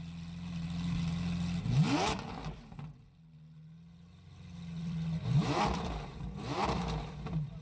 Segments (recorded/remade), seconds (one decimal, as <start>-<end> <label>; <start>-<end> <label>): 0.0-4.8 recorded; 4.8-7.6 remade